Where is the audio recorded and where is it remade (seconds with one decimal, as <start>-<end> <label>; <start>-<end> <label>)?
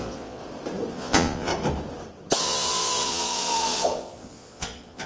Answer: 0.0-0.4 remade; 0.4-0.9 recorded; 0.9-1.5 remade; 1.5-2.4 recorded; 2.4-5.1 remade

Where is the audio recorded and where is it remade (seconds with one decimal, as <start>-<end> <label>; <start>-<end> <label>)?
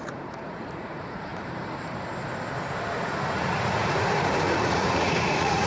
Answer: 0.0-1.3 remade; 1.3-2.9 recorded; 2.9-5.7 remade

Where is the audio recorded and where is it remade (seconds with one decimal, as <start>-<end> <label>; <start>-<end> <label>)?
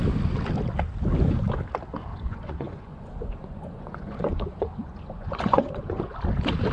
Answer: 0.0-2.1 recorded; 2.1-6.1 remade; 6.1-6.7 recorded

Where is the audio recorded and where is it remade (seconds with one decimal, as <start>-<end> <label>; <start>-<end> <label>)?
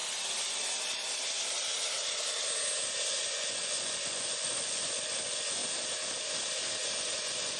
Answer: 0.0-3.2 recorded; 3.2-5.6 remade; 5.6-7.0 recorded; 7.0-7.6 remade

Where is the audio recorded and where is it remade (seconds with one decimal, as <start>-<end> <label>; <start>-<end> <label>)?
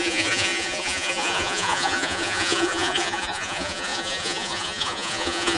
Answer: 0.0-5.6 remade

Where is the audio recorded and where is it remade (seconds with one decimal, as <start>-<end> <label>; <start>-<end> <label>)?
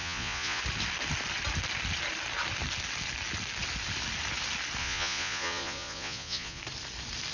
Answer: 0.0-0.6 remade; 0.6-4.8 recorded; 4.8-6.6 remade; 6.6-7.3 recorded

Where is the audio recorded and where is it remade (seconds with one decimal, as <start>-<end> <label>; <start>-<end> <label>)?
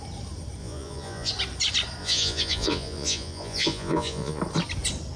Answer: 0.0-0.6 recorded; 0.6-1.3 remade; 1.3-2.0 recorded; 2.0-4.4 remade; 4.4-5.2 recorded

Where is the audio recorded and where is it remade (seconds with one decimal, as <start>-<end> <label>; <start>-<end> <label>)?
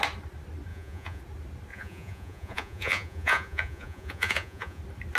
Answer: 0.0-0.7 recorded; 0.7-1.2 remade; 1.2-1.7 recorded; 1.7-4.8 remade; 4.8-5.2 recorded